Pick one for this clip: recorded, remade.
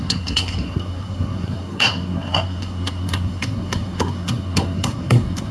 remade